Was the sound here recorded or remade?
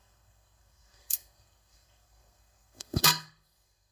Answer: remade